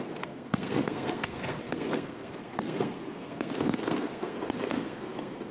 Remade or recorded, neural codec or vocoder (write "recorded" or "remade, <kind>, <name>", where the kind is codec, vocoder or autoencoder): remade, codec, SNAC